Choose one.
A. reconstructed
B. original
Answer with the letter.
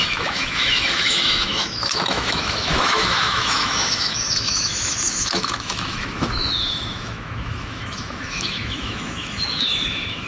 A